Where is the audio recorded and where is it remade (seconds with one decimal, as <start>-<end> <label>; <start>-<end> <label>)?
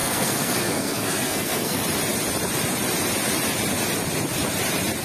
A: 0.0-1.8 remade; 1.8-5.0 recorded